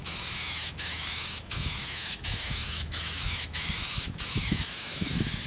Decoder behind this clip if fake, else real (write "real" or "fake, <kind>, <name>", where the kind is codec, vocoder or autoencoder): fake, autoencoder, DAC-VAE